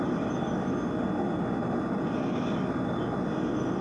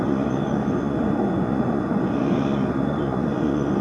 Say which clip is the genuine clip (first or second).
first